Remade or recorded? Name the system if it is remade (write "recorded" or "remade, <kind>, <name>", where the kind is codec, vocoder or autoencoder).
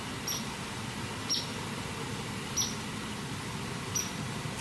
recorded